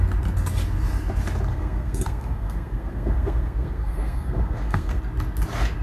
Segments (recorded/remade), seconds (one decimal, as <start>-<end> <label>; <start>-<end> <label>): 0.0-1.5 recorded; 1.5-5.0 remade; 5.0-5.8 recorded